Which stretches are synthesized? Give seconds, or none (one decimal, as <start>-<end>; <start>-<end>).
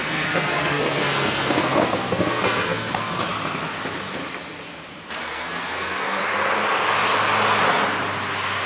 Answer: 0.0-3.3; 5.2-6.2